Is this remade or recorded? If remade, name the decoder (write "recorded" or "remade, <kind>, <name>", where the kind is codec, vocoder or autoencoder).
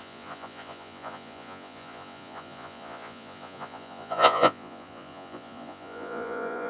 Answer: remade, vocoder, Vocos